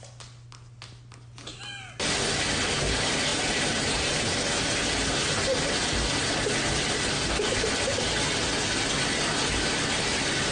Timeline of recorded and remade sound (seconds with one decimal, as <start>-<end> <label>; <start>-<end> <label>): 0.0-3.3 recorded; 3.3-4.3 remade; 4.3-10.5 recorded